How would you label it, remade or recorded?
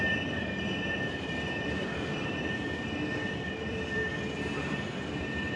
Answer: remade